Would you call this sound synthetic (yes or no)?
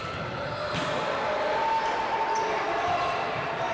no